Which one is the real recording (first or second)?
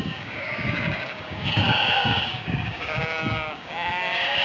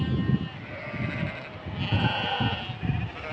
second